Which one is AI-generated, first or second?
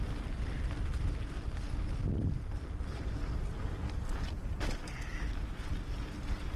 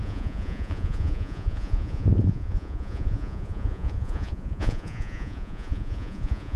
second